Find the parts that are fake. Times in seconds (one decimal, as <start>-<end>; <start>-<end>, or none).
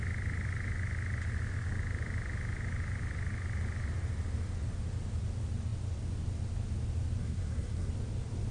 7.2-7.9